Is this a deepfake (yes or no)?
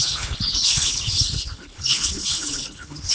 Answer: yes